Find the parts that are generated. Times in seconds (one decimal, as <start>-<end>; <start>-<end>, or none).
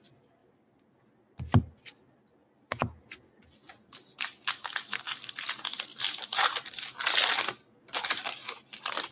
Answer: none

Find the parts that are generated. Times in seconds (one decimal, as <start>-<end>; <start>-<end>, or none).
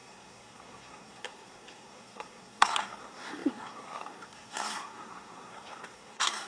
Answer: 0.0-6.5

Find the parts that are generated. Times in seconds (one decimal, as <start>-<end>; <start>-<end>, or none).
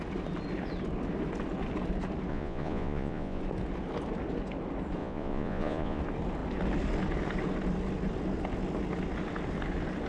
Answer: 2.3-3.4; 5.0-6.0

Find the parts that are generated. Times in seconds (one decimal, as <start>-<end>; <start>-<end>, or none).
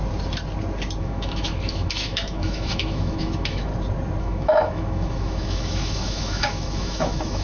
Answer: 1.0-3.7; 4.2-7.4